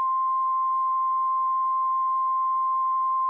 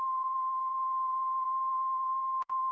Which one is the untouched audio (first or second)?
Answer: first